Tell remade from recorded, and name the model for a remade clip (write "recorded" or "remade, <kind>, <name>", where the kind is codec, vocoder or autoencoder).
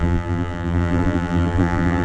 remade, vocoder, BigVGAN v2